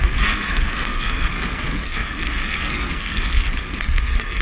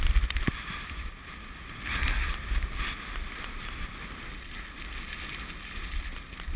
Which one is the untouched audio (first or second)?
second